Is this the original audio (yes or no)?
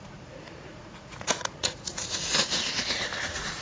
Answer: no